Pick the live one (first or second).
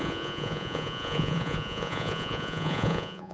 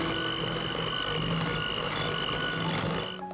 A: second